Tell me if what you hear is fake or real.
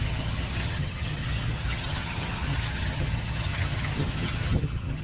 fake